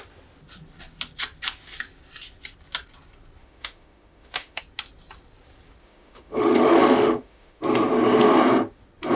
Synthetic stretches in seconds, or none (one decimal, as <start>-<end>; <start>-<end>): 3.4-4.6; 5.8-7.6